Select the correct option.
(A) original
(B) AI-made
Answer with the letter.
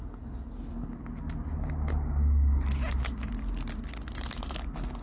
A